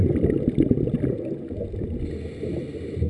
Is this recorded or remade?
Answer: recorded